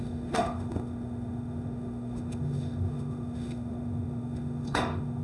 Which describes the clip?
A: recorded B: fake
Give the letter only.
B